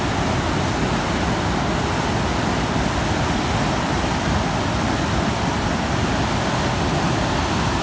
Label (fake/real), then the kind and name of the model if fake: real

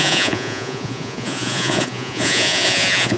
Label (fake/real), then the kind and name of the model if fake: fake, vocoder, Vocos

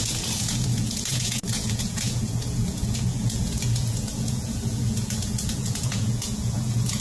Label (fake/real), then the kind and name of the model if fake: fake, vocoder, Vocos